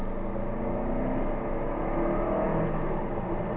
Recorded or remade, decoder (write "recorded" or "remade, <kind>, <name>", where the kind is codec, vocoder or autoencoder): recorded